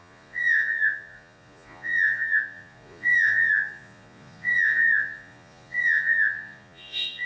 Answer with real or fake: fake